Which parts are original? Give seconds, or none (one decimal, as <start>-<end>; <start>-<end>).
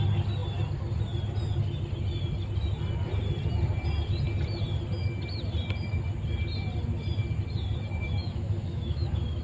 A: 0.0-8.2